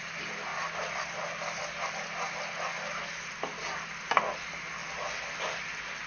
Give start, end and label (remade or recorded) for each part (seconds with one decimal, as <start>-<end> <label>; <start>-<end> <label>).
0.0-6.1 recorded